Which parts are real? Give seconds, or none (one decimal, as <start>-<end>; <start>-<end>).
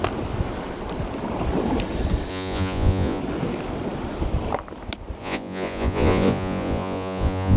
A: 0.0-2.3; 3.2-5.2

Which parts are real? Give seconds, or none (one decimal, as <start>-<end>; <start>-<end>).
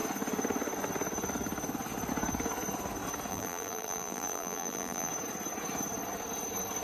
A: 0.0-3.3; 5.1-6.8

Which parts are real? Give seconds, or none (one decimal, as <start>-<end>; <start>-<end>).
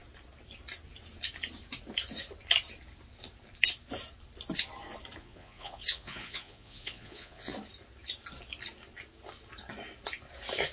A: 0.0-5.2; 7.5-10.7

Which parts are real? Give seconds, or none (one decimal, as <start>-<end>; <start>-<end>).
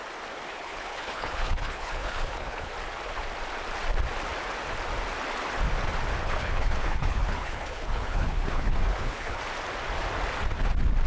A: 0.0-0.5; 2.7-6.2; 9.4-11.1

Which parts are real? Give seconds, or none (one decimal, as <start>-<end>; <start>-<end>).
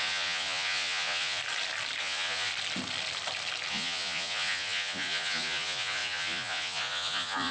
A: 1.4-2.0; 2.5-3.7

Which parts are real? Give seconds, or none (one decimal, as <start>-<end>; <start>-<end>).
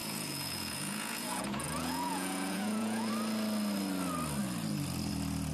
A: 3.1-5.5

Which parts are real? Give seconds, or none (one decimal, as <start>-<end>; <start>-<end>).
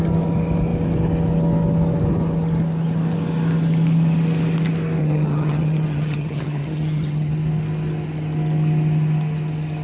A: 0.0-5.0; 7.3-9.8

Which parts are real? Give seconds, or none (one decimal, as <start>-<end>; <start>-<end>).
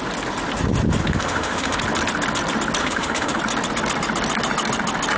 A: 0.0-1.0; 1.8-2.8; 3.4-5.2